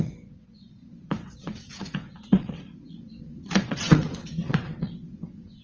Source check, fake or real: fake